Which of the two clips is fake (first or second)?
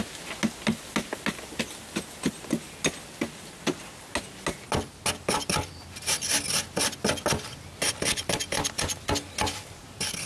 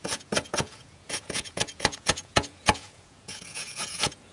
second